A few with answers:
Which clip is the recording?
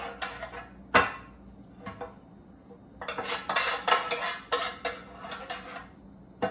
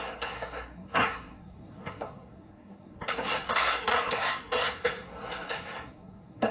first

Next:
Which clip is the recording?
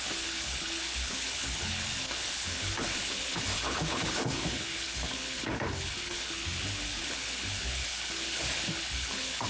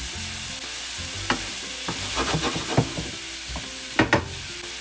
second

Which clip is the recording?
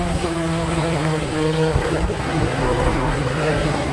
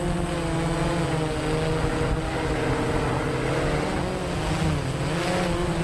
second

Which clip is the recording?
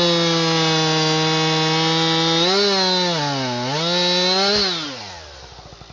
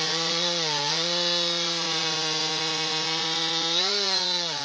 first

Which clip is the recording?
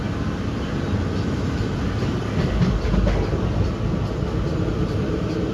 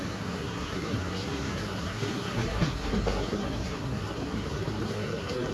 first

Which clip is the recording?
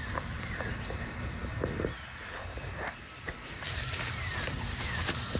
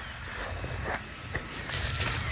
second